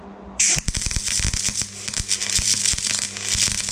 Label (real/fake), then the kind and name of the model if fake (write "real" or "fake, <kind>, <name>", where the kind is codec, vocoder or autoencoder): real